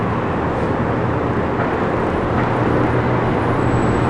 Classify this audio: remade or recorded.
recorded